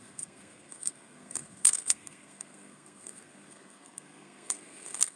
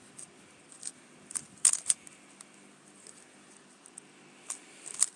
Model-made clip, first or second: first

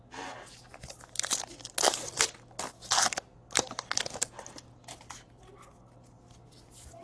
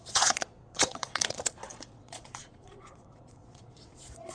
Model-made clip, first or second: second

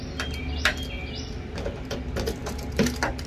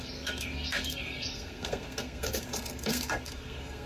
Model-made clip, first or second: second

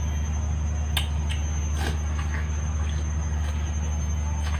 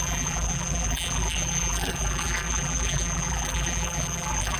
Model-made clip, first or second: second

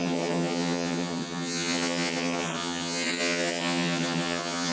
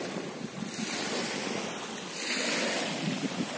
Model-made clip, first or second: first